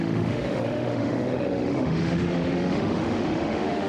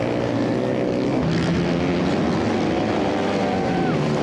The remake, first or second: first